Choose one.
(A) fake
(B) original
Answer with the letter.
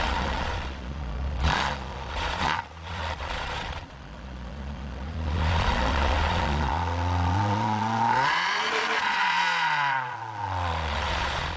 A